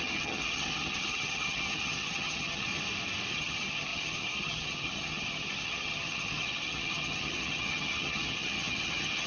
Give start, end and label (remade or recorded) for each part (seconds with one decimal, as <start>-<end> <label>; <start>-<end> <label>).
0.0-2.7 remade; 2.7-3.3 recorded; 3.3-9.3 remade